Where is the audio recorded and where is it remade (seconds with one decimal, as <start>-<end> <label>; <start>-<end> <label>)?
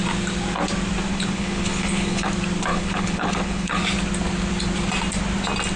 0.0-1.1 recorded; 1.1-2.3 remade; 2.3-2.7 recorded; 2.7-3.8 remade; 3.8-5.8 recorded